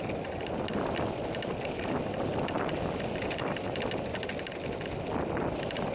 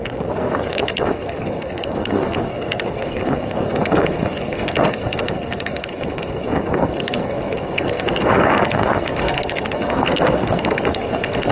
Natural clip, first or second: first